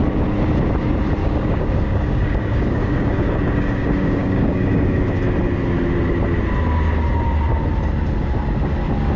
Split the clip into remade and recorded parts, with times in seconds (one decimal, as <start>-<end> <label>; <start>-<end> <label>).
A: 0.0-1.2 recorded; 1.2-5.2 remade; 5.2-9.2 recorded